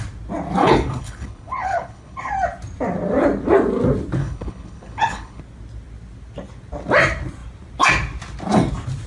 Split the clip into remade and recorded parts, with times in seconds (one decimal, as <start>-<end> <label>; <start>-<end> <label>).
0.0-0.6 recorded; 0.6-2.3 remade; 2.3-4.2 recorded; 4.2-5.4 remade; 5.4-9.1 recorded